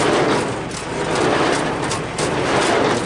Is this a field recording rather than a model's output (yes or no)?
yes